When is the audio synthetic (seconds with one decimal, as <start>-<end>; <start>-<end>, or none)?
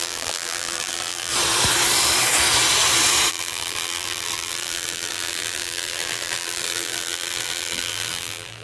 0.0-1.3; 3.3-8.6